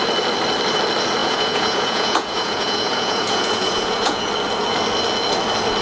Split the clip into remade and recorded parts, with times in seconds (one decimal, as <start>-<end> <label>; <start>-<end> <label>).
0.0-1.2 recorded; 1.2-4.3 remade; 4.3-5.8 recorded